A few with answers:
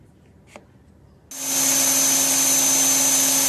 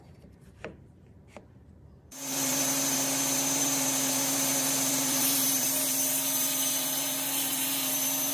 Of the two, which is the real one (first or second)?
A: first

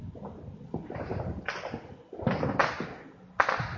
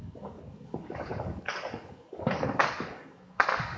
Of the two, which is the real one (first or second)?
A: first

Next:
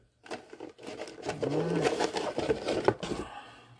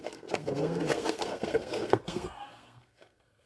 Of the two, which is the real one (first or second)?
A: first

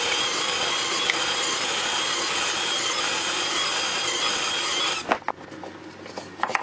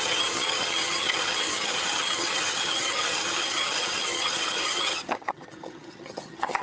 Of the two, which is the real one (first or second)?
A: first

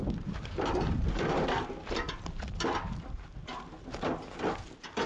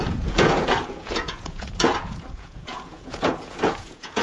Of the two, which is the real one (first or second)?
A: first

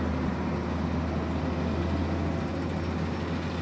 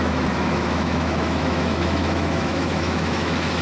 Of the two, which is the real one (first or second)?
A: first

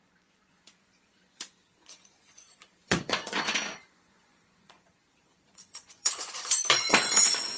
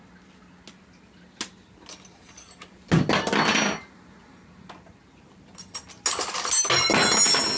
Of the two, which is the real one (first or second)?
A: second